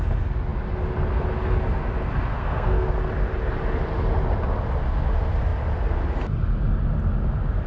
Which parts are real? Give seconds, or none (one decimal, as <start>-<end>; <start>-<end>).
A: 0.0-2.3; 2.9-7.7